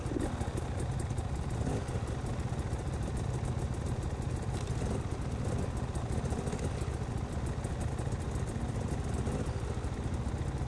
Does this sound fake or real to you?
real